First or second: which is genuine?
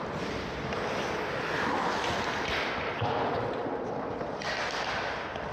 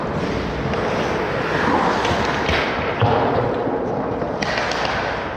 second